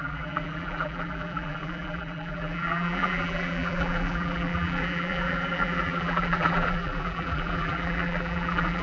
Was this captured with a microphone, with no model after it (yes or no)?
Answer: no